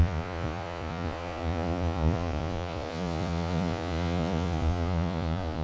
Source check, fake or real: fake